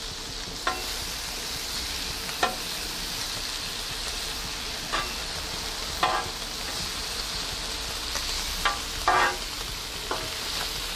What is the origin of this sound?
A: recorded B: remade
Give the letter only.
A